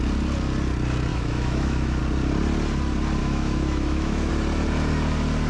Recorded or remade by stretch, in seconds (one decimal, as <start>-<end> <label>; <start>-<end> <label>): 0.0-1.1 recorded; 1.1-2.0 remade; 2.0-3.2 recorded; 3.2-4.3 remade; 4.3-5.5 recorded